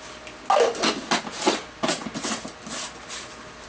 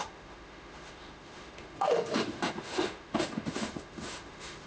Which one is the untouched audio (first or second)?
first